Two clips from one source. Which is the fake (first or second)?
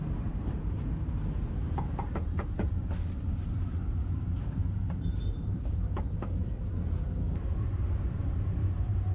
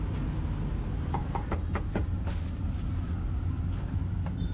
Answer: first